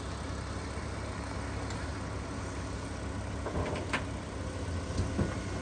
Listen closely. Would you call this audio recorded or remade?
recorded